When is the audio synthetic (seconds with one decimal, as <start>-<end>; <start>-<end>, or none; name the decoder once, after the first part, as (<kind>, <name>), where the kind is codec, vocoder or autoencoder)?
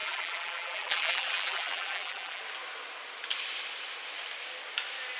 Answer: 0.0-2.4 (vocoder, BigVGAN v2)